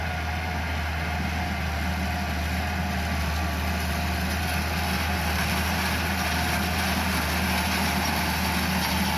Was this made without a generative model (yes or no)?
yes